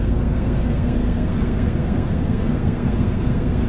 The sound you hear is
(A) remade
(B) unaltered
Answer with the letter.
A